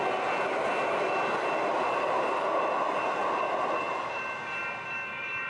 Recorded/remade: recorded